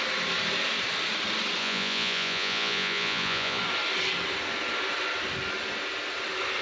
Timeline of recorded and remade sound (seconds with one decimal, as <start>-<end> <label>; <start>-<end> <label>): 0.0-1.6 recorded; 1.6-3.6 remade; 3.6-6.6 recorded

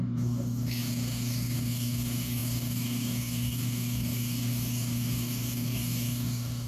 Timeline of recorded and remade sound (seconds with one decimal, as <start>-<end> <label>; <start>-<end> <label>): 0.0-6.7 remade